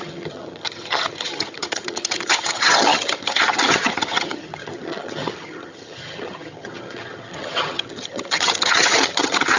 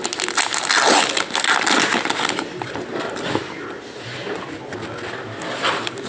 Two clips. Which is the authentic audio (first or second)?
second